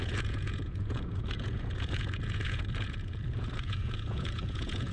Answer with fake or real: fake